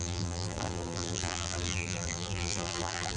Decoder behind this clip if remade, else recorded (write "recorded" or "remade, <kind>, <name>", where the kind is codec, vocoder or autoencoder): remade, vocoder, BigVGAN v2